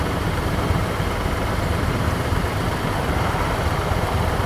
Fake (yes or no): yes